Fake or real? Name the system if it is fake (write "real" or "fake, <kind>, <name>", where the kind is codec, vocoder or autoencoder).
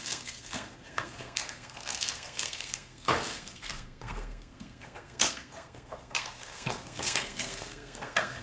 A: fake, codec, SNAC